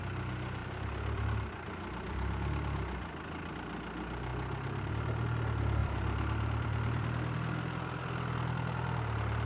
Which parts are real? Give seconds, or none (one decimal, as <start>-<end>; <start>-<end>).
0.0-0.6; 3.5-5.8; 7.6-9.5